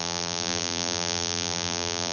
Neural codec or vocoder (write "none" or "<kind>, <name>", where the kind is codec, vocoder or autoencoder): vocoder, BigVGAN v2